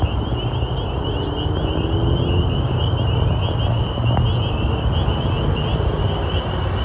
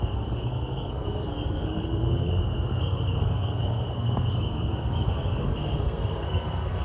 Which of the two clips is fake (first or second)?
second